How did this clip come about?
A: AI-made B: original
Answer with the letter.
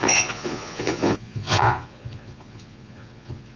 A